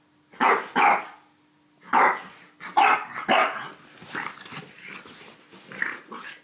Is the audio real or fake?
real